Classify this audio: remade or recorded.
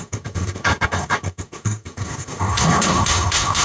remade